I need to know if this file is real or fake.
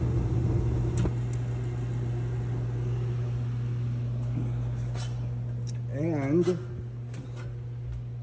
real